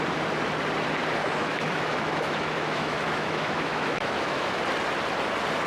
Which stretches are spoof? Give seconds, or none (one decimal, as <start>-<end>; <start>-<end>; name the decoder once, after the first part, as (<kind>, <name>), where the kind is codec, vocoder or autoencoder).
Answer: 1.2-4.6 (autoencoder, DAC-VAE)